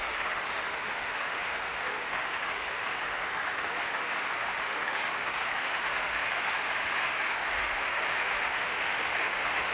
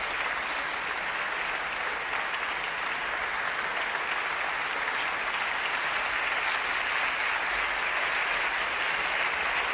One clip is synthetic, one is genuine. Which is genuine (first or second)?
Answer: second